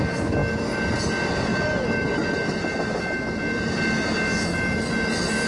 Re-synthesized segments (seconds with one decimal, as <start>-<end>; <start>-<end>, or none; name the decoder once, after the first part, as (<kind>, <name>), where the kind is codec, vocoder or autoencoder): 1.5-2.1 (vocoder, BigVGAN v2)

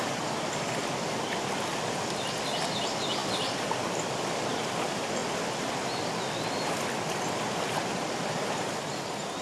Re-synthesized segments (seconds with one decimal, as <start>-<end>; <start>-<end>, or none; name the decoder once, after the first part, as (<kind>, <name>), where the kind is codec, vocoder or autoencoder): none

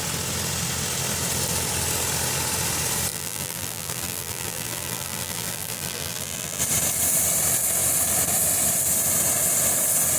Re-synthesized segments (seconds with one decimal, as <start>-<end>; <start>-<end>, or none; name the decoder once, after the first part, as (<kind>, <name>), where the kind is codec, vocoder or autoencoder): 3.1-6.6 (vocoder, BigVGAN v2)

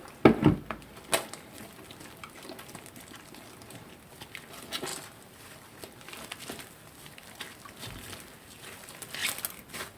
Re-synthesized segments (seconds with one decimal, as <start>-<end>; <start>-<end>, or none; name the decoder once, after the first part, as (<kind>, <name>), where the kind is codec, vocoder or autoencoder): none

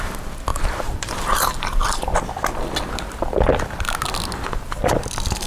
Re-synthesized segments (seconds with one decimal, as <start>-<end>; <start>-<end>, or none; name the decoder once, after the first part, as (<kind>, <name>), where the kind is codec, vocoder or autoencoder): 0.5-1.1 (vocoder, BigVGAN v2)

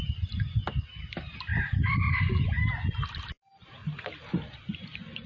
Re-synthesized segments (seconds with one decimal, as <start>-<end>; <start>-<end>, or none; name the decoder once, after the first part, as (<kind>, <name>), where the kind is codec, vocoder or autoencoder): none